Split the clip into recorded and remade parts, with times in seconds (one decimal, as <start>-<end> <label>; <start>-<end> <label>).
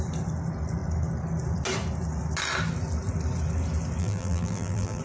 0.0-4.0 recorded; 4.0-5.0 remade